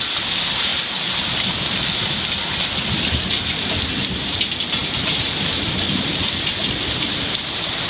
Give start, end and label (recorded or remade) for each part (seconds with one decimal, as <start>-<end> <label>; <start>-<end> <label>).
0.0-4.8 recorded; 4.8-5.7 remade; 5.7-7.9 recorded